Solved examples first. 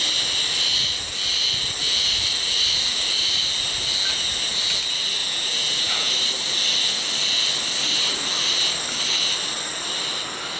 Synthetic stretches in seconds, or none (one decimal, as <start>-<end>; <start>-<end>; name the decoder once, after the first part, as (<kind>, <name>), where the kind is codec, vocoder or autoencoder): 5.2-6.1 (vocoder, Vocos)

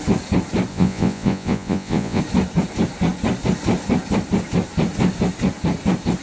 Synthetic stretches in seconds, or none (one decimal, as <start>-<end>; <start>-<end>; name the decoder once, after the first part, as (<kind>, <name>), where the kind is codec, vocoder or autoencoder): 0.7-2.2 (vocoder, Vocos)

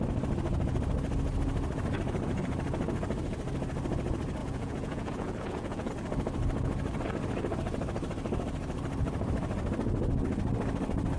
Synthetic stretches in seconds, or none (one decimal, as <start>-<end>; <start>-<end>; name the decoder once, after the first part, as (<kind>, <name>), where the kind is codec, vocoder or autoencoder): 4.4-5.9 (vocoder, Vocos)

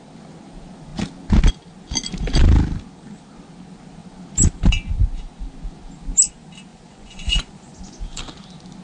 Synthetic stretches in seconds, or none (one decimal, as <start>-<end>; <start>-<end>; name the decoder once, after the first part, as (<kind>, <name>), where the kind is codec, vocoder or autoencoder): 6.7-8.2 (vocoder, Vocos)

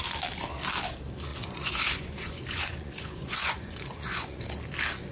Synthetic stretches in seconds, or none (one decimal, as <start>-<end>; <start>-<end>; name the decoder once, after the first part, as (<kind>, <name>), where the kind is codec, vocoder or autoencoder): 1.3-4.4 (vocoder, Vocos)